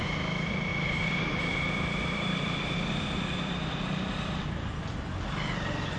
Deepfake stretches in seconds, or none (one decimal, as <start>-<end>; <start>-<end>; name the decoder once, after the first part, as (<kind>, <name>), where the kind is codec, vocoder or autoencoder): 0.7-4.3 (vocoder, BigVGAN v2)